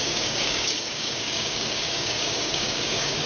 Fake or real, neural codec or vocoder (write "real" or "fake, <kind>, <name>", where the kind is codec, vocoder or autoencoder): fake, codec, DAC